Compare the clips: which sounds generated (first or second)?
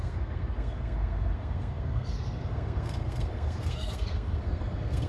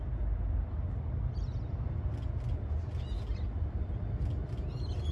first